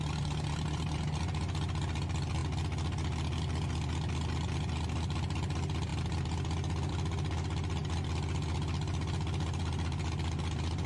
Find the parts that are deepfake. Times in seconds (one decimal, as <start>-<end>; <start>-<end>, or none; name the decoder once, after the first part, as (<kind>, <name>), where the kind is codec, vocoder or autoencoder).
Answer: none